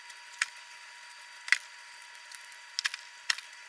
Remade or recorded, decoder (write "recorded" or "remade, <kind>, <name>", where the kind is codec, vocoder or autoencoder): recorded